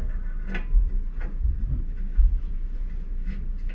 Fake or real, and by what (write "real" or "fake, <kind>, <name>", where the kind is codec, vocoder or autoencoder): real